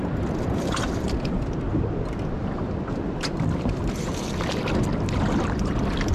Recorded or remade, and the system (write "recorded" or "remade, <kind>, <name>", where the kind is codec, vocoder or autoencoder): recorded